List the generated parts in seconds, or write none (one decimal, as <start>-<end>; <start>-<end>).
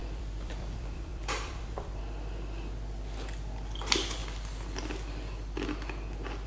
0.0-2.0